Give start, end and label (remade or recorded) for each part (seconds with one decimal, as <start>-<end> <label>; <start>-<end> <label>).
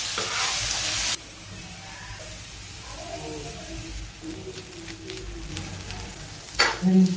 0.0-5.5 recorded; 5.5-6.6 remade; 6.6-7.2 recorded